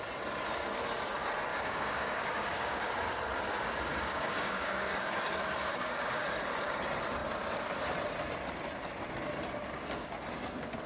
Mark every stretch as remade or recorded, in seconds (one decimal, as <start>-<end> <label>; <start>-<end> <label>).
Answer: 0.0-1.5 recorded; 1.5-2.9 remade; 2.9-3.9 recorded; 3.9-4.9 remade; 4.9-5.7 recorded; 5.7-6.2 remade; 6.2-10.9 recorded